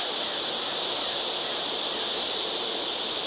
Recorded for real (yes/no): no